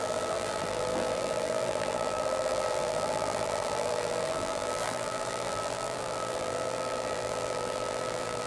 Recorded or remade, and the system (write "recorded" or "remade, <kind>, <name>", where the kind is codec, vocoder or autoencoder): remade, vocoder, BigVGAN v2